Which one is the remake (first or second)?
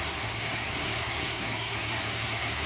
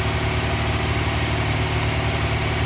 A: first